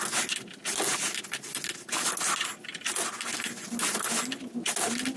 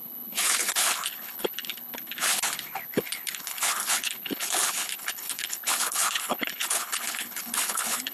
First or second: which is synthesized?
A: second